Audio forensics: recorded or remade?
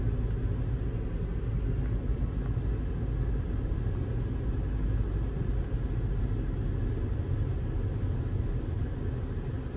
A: recorded